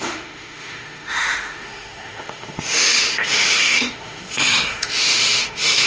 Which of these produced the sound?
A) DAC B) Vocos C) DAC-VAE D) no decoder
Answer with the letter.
C